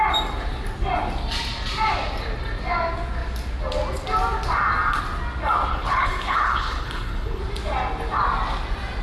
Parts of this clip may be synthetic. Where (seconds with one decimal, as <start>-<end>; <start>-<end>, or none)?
5.7-7.4